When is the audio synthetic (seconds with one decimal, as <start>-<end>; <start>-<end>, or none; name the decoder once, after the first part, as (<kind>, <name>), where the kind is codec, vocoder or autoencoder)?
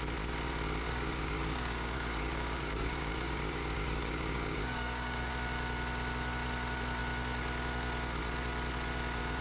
0.8-5.3 (codec, DAC)